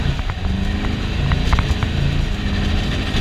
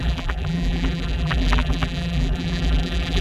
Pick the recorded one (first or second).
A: first